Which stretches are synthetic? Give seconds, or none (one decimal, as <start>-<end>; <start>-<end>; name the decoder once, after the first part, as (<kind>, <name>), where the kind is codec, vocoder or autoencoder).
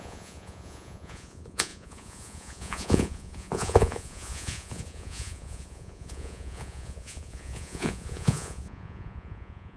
0.0-9.8 (vocoder, Vocos)